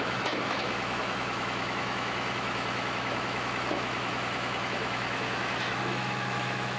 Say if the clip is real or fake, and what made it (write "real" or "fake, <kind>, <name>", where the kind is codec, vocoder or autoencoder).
fake, autoencoder, DAC-VAE